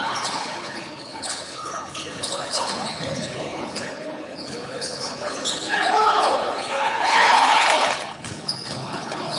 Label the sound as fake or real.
fake